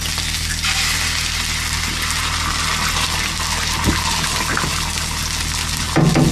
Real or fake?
real